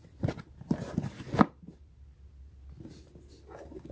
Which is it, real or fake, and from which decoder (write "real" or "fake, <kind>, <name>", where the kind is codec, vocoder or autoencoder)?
real